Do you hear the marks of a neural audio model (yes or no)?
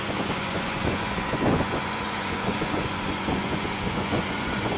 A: yes